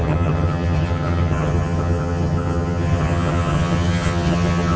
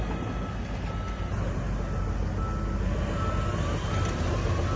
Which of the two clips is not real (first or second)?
first